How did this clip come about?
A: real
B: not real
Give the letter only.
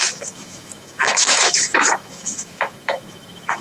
B